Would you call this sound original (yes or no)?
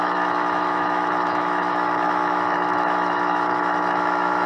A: no